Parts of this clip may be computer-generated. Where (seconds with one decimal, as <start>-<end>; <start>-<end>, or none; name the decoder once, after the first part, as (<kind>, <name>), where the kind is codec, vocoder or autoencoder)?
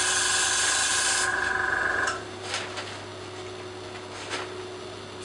1.3-2.5 (vocoder, BigVGAN v2)